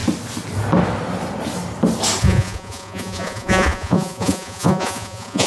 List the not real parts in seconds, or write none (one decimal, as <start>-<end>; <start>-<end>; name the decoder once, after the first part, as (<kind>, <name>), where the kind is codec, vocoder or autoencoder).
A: 2.2-5.5 (vocoder, Vocos)